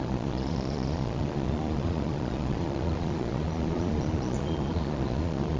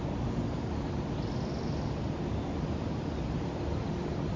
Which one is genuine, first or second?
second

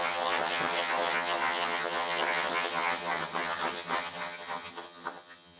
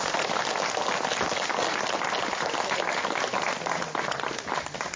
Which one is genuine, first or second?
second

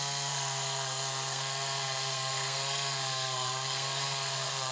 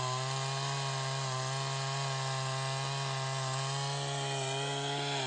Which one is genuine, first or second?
second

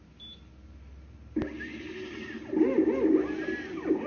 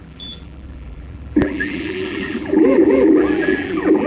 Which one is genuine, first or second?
first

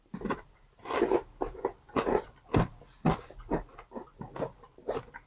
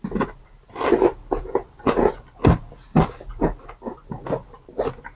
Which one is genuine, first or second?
second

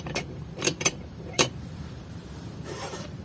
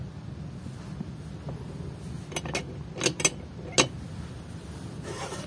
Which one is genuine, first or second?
second